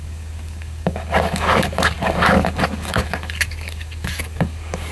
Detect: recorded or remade remade